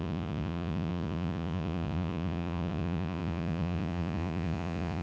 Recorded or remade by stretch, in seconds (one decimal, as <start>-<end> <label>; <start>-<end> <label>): 0.0-5.0 remade